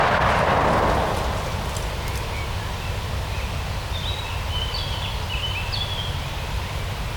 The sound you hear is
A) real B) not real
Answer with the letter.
A